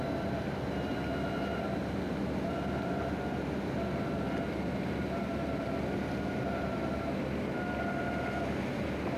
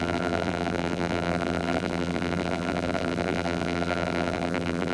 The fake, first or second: second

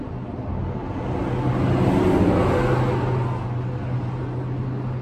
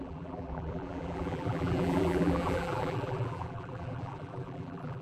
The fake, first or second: second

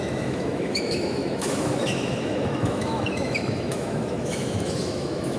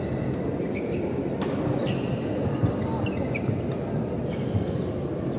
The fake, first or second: first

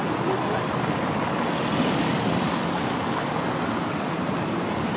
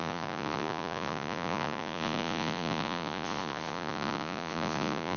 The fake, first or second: second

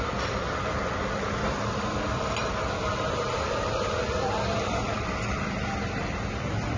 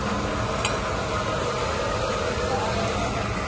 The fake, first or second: first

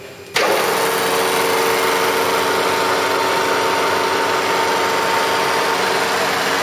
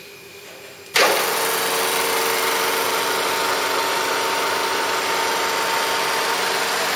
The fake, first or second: second